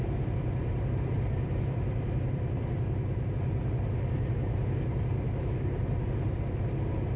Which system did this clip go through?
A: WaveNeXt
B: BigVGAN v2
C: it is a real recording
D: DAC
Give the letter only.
B